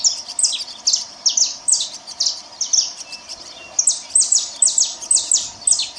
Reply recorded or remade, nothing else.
recorded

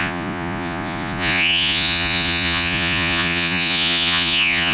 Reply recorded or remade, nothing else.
remade